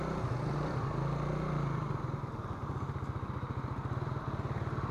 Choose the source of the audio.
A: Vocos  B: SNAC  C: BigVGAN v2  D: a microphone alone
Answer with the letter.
D